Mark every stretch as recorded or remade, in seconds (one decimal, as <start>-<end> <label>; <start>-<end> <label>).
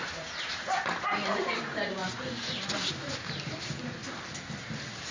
0.0-4.0 remade; 4.0-5.1 recorded